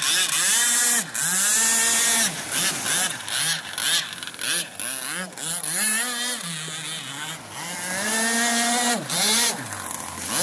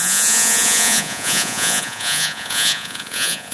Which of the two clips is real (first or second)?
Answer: first